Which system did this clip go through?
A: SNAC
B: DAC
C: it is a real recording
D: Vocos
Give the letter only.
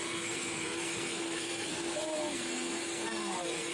A